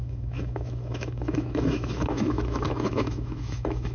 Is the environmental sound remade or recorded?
remade